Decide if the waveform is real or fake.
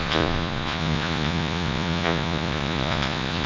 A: fake